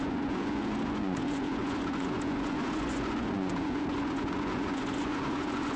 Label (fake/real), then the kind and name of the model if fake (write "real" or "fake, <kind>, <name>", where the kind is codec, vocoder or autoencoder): fake, vocoder, Vocos